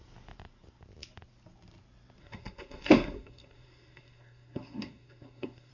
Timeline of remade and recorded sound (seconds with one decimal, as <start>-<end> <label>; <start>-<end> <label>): 0.0-2.2 recorded; 2.2-5.7 remade